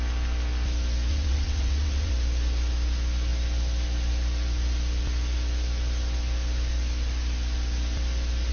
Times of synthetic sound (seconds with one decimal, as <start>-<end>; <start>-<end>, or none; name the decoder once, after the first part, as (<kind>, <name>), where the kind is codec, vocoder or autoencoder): 1.1-2.1 (vocoder, WaveNeXt)